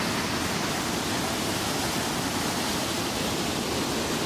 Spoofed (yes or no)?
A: no